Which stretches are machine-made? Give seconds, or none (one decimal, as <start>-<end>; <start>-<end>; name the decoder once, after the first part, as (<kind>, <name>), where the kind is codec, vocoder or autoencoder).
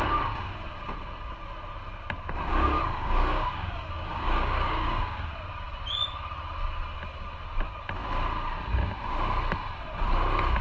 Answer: 2.5-5.3 (codec, DAC)